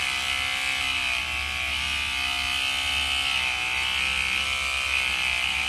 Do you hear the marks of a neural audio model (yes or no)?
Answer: no